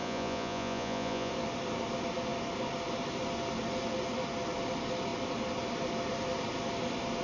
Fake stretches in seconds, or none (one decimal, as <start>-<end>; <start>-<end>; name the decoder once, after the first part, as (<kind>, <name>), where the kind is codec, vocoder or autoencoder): 0.0-1.3 (vocoder, Vocos)